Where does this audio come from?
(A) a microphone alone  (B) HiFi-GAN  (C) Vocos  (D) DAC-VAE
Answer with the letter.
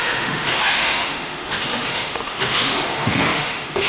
D